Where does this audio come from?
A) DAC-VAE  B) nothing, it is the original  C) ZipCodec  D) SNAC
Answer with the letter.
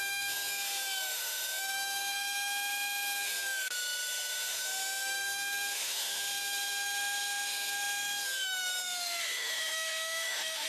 A